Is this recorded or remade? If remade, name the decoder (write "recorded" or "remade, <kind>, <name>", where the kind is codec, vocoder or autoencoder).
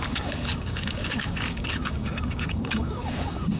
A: remade, codec, DAC